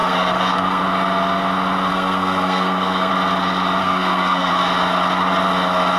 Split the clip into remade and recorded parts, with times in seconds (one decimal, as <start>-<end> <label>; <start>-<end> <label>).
0.0-0.8 remade; 0.8-1.9 recorded; 1.9-3.1 remade; 3.1-3.8 recorded; 3.8-4.5 remade; 4.5-6.0 recorded